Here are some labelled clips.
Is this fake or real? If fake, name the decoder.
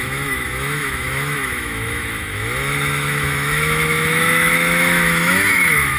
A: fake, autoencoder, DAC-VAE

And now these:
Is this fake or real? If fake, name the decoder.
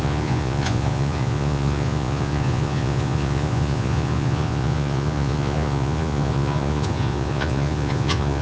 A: fake, vocoder, Vocos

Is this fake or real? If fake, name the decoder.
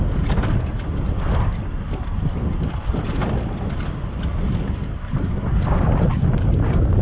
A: real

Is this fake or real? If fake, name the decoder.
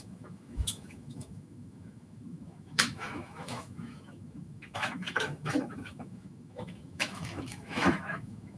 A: fake, autoencoder, DAC-VAE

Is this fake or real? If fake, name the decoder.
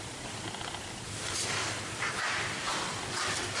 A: fake, vocoder, BigVGAN v2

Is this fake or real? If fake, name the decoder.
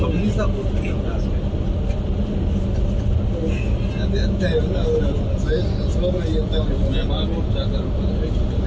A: real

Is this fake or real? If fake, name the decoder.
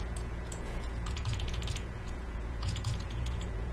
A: fake, vocoder, Vocos